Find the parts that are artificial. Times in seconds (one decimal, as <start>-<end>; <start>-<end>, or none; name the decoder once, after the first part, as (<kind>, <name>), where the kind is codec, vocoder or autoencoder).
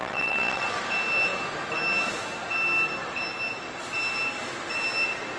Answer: 0.0-0.8 (vocoder, WaveNeXt)